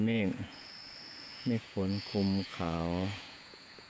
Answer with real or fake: fake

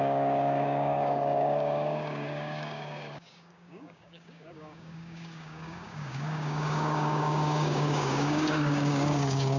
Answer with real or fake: fake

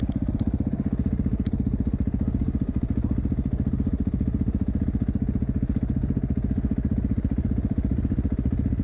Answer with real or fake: real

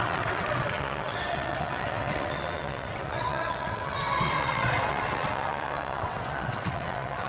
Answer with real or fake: fake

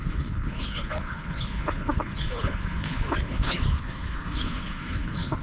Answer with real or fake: fake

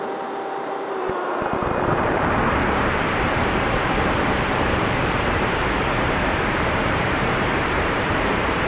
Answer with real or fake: fake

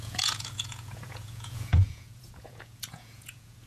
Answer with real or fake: fake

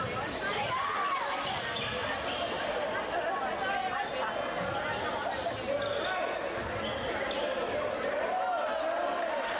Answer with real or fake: real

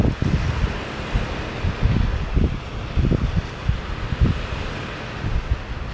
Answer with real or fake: real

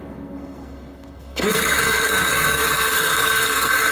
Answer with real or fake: fake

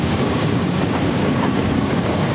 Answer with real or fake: fake